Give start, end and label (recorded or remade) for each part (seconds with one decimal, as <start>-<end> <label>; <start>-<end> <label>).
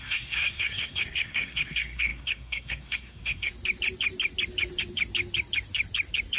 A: 0.0-3.5 remade; 3.5-6.4 recorded